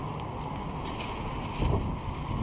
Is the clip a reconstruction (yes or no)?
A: no